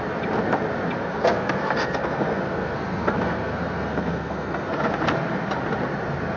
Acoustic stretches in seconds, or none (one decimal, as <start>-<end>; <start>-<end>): 0.0-1.1; 4.9-6.4

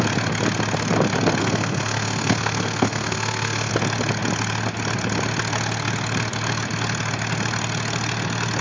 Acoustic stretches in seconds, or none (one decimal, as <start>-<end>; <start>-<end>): 0.0-1.4; 3.7-8.6

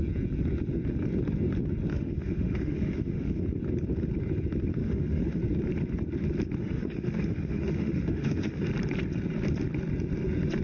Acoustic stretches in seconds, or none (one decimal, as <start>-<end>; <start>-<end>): 0.0-1.9; 3.4-4.8; 5.4-6.6; 8.7-10.6